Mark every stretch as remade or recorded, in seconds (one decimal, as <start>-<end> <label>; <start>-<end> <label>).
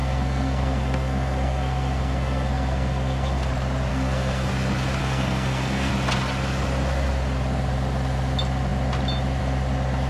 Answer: 0.0-3.5 remade; 3.5-3.9 recorded; 3.9-4.5 remade; 4.5-5.0 recorded; 5.0-5.9 remade; 5.9-10.1 recorded